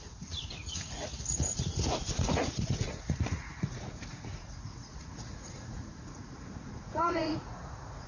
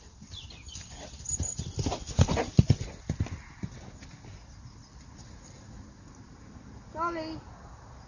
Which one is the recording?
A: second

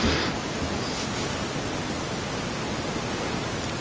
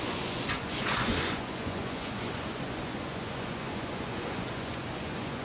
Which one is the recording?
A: first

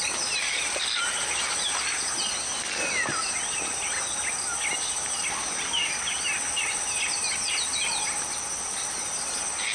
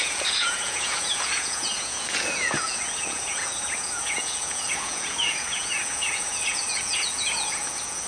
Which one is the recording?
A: first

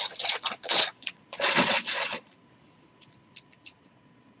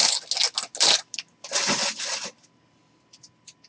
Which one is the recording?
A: second